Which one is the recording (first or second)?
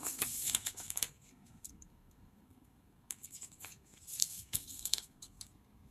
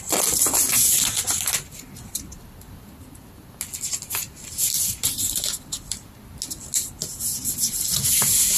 second